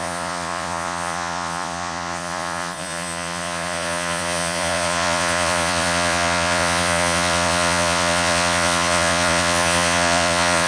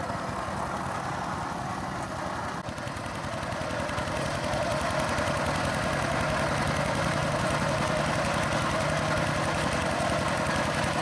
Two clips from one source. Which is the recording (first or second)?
second